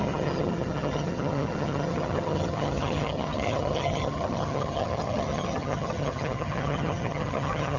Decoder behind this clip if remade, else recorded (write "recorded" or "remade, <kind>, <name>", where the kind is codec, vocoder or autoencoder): remade, vocoder, HiFi-GAN